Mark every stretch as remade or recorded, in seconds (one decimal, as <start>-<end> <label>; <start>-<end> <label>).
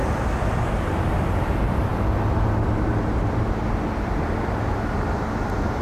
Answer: 0.0-1.0 remade; 1.0-5.8 recorded